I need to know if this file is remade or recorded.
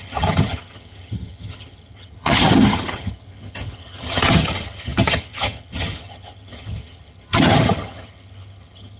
remade